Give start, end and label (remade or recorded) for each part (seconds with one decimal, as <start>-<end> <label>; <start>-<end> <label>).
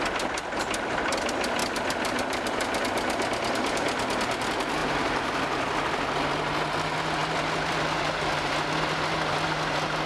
0.0-1.6 recorded; 1.6-2.8 remade; 2.8-4.8 recorded; 4.8-5.6 remade; 5.6-7.2 recorded; 7.2-8.0 remade; 8.0-10.1 recorded